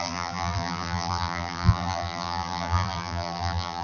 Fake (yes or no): yes